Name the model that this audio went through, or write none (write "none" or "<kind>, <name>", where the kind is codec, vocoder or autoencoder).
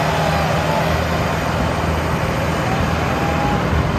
none